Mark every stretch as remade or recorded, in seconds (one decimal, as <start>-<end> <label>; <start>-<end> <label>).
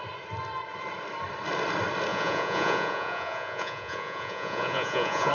0.0-2.1 recorded; 2.1-5.3 remade